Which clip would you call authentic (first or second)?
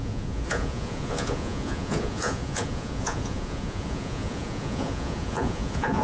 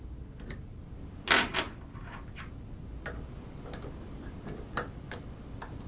second